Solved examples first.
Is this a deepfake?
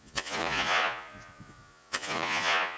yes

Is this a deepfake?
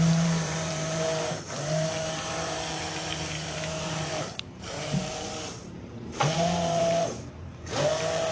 yes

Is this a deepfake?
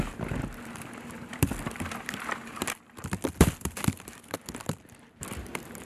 yes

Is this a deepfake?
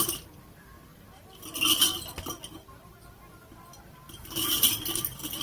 no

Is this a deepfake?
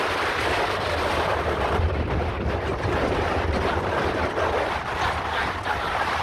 no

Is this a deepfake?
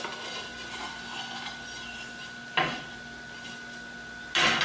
no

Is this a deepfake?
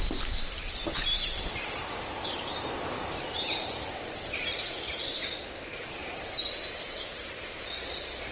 yes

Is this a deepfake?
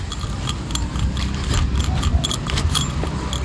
no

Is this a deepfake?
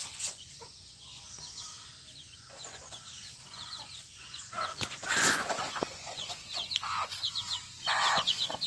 yes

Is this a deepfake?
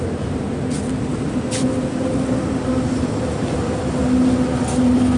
no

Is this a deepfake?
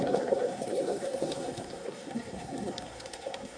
yes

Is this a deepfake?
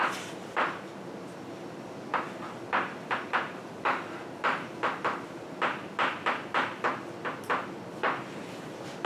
no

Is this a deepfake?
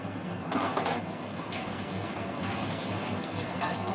yes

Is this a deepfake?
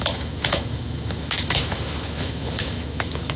yes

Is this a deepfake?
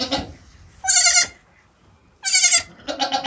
no